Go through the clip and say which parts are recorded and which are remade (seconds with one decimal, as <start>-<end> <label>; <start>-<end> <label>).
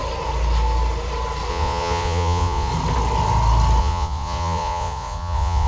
0.0-1.5 recorded; 1.5-2.7 remade; 2.7-3.8 recorded; 3.8-5.7 remade